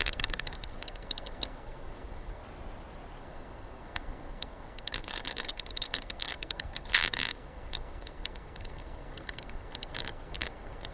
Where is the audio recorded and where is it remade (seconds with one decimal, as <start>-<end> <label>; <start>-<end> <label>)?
0.0-2.4 remade; 2.4-3.2 recorded; 3.2-10.9 remade